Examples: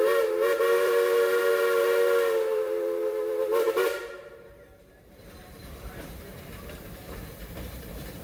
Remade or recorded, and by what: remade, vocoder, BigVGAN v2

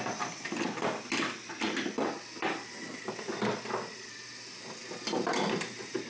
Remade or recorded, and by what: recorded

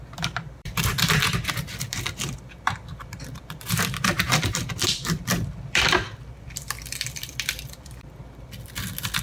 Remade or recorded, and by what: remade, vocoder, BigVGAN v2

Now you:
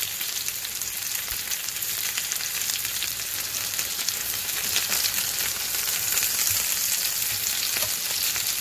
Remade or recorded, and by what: recorded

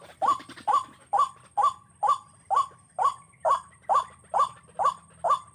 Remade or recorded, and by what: recorded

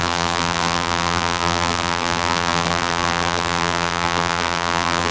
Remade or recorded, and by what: remade, vocoder, BigVGAN v2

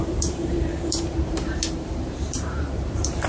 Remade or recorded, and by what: remade, vocoder, BigVGAN v2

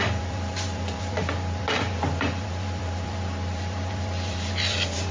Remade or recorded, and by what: remade, vocoder, BigVGAN v2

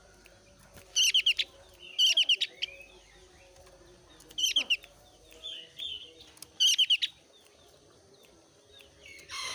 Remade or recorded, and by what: recorded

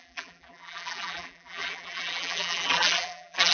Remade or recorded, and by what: remade, vocoder, BigVGAN v2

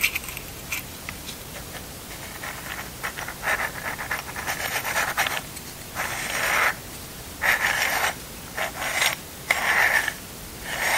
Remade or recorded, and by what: recorded